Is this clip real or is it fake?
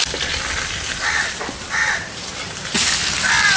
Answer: real